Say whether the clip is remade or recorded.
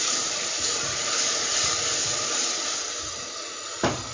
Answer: recorded